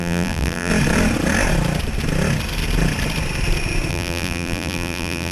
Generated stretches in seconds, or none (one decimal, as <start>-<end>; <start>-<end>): 0.0-0.7; 3.9-5.3